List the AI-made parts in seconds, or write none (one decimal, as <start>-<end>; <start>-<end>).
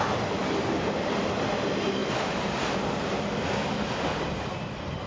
none